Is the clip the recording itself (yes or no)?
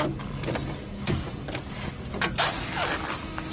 yes